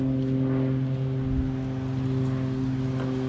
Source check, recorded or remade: recorded